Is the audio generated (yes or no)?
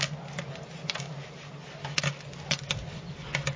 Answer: no